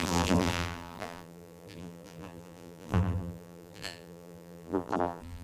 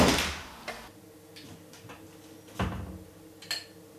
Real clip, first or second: second